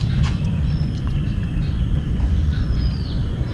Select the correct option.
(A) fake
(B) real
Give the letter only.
A